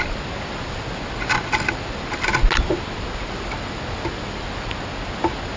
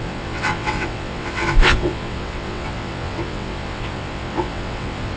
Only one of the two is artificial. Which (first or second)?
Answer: second